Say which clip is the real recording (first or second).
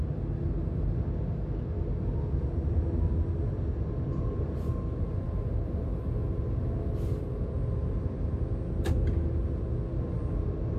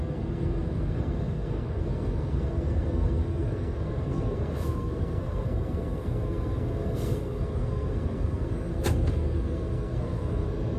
first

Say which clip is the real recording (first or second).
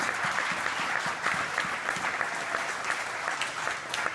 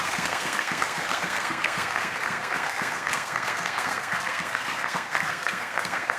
first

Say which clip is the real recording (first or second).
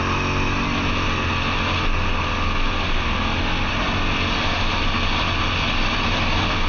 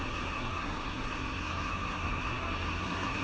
first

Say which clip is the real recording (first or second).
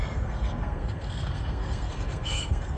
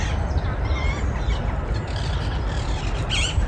second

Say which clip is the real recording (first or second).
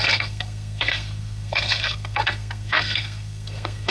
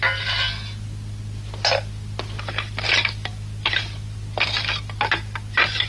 second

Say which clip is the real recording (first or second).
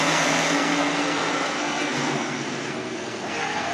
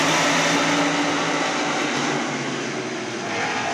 second